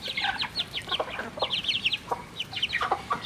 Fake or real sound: fake